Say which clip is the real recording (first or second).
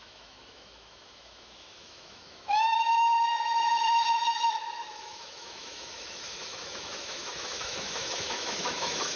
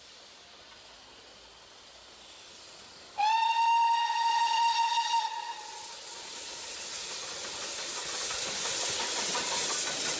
second